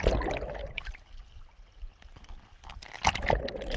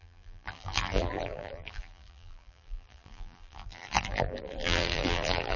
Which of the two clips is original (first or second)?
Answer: first